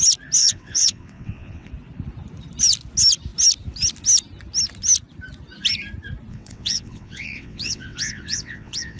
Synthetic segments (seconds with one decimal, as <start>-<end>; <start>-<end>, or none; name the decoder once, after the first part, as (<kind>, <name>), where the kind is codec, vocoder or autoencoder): 0.4-1.7 (vocoder, WaveNeXt); 6.3-9.0